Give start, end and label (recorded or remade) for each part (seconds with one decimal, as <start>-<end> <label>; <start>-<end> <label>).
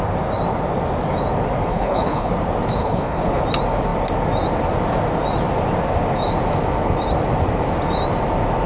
0.0-1.7 recorded; 1.7-2.3 remade; 2.3-2.8 recorded; 2.8-3.4 remade; 3.4-8.7 recorded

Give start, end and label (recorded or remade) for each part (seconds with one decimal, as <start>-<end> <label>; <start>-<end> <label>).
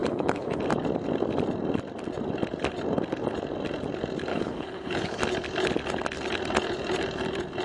0.0-0.6 remade; 0.6-4.3 recorded; 4.3-5.2 remade; 5.2-7.6 recorded